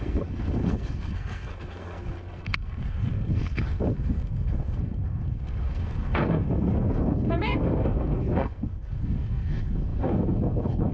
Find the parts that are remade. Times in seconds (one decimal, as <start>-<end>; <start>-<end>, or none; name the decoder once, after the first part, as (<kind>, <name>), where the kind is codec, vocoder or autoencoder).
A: 0.0-10.9 (codec, SNAC)